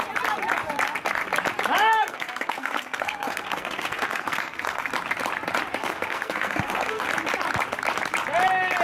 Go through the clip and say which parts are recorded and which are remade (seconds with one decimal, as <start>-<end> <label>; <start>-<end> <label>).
0.0-1.8 recorded; 1.8-4.9 remade; 4.9-5.8 recorded; 5.8-7.1 remade; 7.1-8.8 recorded